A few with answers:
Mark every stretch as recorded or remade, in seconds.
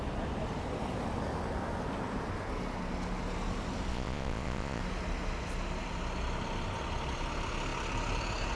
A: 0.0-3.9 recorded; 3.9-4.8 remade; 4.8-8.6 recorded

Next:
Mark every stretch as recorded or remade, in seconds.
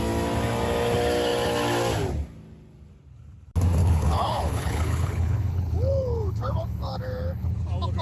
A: 0.0-3.8 recorded; 3.8-7.5 remade; 7.5-8.0 recorded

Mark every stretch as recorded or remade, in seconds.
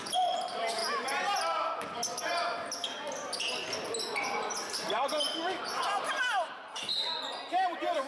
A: 0.0-0.8 remade; 0.8-5.6 recorded; 5.6-8.1 remade